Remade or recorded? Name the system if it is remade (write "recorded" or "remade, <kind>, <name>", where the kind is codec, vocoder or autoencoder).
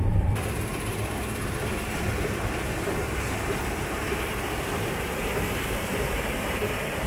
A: remade, vocoder, BigVGAN v2